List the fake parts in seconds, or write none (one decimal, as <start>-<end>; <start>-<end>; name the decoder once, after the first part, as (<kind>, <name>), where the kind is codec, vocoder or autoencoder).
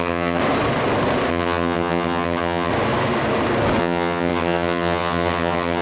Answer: 0.0-0.4 (vocoder, HiFi-GAN); 1.3-2.7; 3.8-5.8